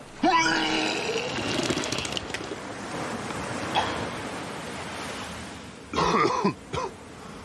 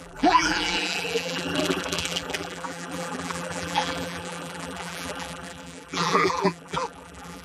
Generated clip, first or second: second